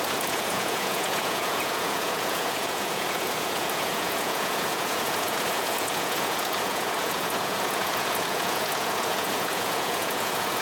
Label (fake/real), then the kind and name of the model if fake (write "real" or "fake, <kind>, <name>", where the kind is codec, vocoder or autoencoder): fake, vocoder, Vocos